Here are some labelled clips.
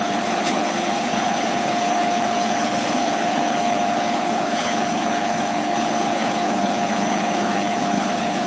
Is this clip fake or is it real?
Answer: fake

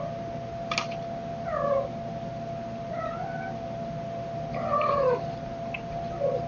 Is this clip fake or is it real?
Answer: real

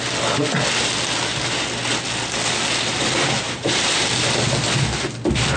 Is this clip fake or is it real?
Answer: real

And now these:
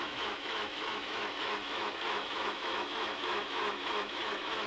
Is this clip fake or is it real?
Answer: fake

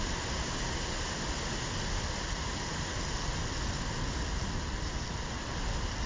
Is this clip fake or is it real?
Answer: real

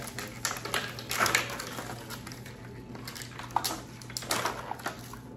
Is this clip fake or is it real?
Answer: real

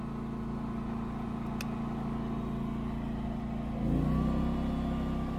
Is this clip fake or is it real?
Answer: real